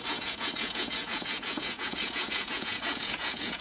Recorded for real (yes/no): no